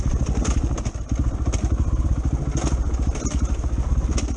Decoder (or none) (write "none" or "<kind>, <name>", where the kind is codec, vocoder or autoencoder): none